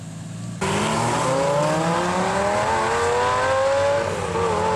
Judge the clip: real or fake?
real